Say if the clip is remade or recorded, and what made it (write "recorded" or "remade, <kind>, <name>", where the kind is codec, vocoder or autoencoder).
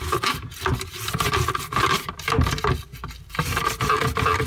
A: recorded